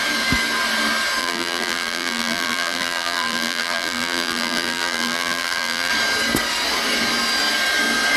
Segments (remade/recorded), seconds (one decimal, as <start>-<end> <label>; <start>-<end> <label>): 0.0-1.2 recorded; 1.2-5.9 remade; 5.9-8.2 recorded